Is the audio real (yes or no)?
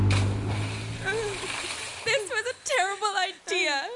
yes